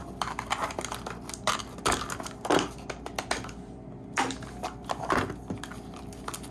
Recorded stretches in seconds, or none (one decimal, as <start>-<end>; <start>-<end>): 0.0-6.5

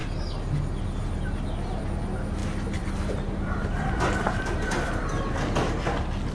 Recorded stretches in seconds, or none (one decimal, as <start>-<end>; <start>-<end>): 0.0-2.4

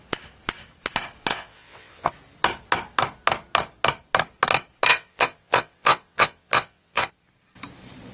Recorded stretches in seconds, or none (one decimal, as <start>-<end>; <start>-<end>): 0.0-1.3; 2.1-4.9; 7.1-8.1

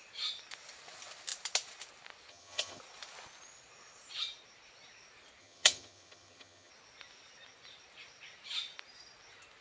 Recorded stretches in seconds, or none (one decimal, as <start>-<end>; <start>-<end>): 0.0-2.3; 2.8-5.4; 6.7-9.6